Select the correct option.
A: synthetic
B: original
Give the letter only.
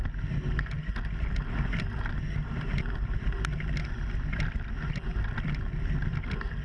B